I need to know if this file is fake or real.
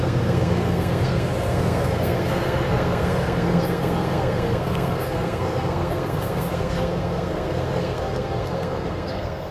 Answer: fake